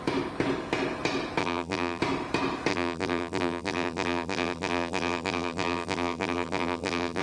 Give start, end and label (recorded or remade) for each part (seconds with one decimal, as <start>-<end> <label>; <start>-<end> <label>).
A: 0.0-1.4 recorded; 1.4-2.0 remade; 2.0-2.7 recorded; 2.7-7.2 remade